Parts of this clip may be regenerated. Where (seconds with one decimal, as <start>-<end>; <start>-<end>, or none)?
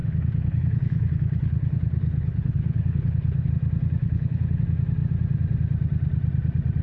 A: 0.0-3.5; 4.0-4.6